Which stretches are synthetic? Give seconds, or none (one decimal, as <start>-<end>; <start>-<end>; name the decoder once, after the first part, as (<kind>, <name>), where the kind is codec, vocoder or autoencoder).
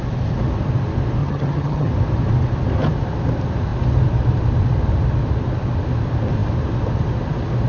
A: 1.2-1.9 (vocoder, HiFi-GAN)